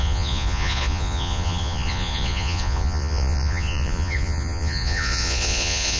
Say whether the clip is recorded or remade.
remade